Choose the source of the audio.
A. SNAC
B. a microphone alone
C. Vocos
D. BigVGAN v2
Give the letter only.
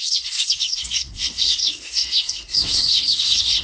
A